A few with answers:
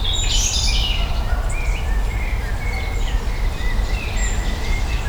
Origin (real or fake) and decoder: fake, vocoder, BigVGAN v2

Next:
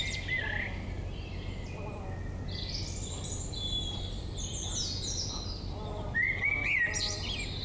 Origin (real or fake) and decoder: real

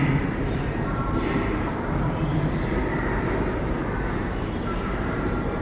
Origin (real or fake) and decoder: fake, vocoder, BigVGAN v2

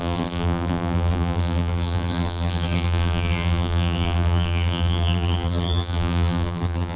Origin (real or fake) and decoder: fake, vocoder, BigVGAN v2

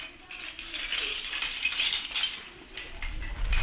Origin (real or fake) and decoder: real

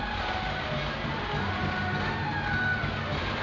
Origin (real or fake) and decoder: real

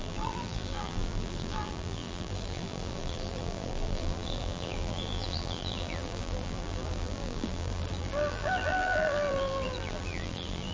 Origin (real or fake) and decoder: fake, vocoder, BigVGAN v2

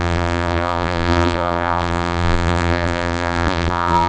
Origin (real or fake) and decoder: fake, vocoder, BigVGAN v2